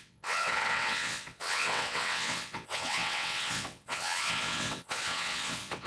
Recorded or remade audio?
remade